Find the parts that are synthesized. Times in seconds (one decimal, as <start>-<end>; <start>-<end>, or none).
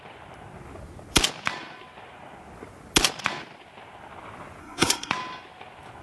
4.6-5.1